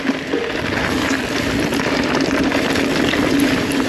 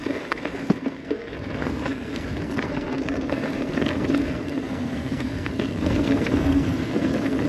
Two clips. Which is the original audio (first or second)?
first